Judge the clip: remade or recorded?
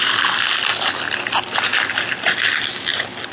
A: recorded